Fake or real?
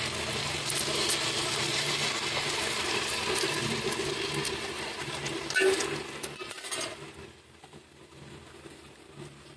real